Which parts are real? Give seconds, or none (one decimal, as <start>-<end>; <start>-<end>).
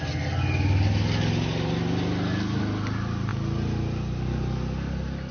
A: 0.0-5.3